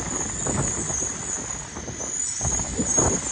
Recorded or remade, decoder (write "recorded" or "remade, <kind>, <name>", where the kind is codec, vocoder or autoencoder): recorded